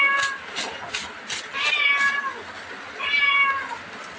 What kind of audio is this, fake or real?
real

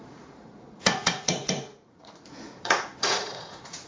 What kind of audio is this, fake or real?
fake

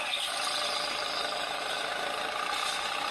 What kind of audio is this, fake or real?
real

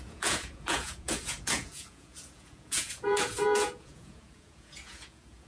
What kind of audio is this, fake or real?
fake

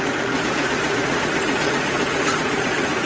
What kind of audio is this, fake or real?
fake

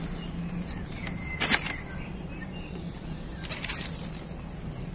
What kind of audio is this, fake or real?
real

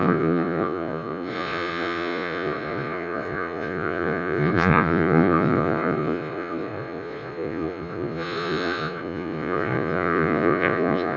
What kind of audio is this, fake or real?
fake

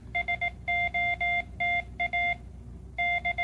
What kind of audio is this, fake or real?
real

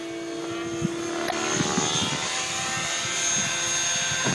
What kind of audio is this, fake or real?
real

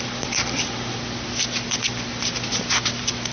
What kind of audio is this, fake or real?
real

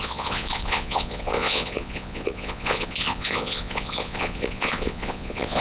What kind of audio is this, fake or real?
fake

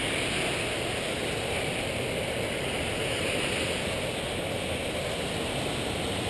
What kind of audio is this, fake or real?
real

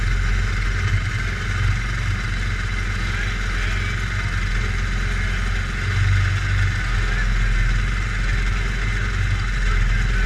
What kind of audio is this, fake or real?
real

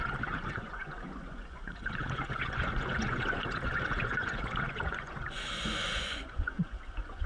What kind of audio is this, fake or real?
fake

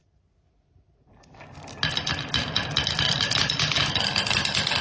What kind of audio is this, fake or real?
real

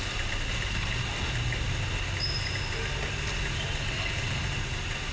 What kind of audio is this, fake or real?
real